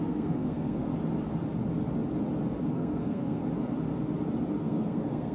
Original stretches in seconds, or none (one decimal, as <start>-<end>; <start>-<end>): 0.9-2.7; 3.4-4.6